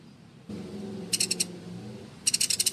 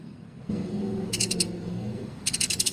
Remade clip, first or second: second